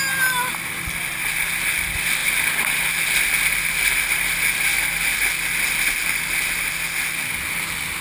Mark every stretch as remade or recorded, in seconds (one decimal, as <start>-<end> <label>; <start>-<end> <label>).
0.0-8.0 recorded